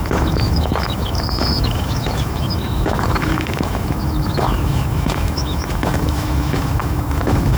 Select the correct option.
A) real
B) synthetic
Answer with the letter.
B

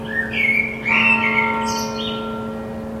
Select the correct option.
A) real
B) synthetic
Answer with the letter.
A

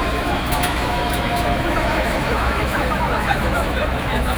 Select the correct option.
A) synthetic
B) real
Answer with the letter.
A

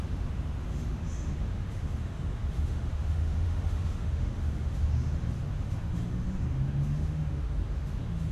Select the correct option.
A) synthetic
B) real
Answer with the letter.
A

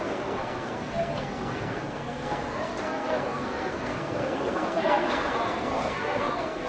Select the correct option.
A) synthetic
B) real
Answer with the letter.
A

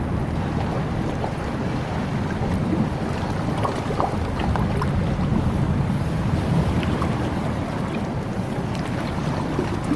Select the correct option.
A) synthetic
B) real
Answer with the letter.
B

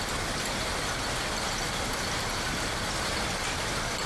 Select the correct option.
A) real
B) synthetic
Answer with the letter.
A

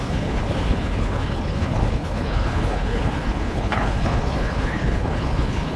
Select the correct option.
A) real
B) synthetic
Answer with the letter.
B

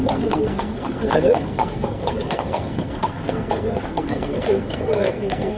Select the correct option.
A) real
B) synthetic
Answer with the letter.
B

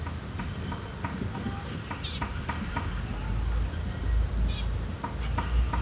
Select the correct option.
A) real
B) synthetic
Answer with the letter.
A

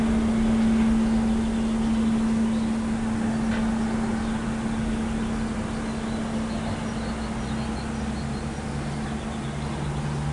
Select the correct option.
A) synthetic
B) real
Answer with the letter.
B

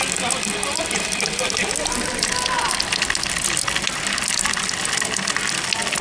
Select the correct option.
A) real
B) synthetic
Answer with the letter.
A